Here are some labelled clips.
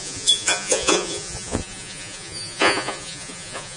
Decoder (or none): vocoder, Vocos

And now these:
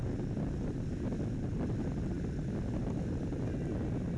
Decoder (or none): none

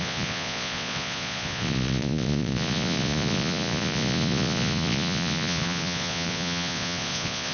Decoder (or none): vocoder, Vocos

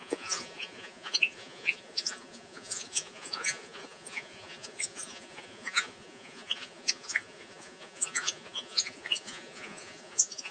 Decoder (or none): vocoder, Vocos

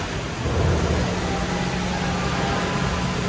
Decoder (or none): none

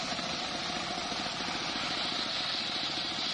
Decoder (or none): none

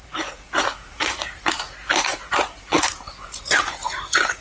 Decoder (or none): vocoder, Vocos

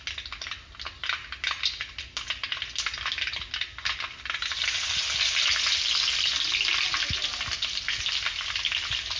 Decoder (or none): none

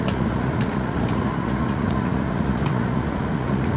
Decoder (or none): vocoder, Vocos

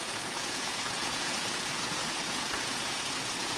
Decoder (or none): vocoder, Vocos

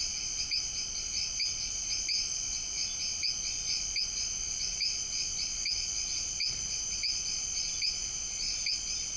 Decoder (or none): none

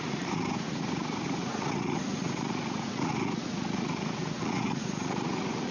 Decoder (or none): vocoder, Vocos